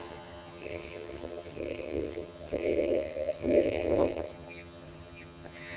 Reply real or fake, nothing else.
fake